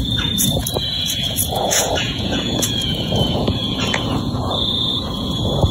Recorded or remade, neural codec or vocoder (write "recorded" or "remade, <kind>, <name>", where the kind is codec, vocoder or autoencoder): remade, vocoder, Vocos